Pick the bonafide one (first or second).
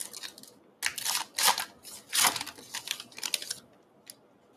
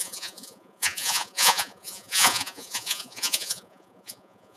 first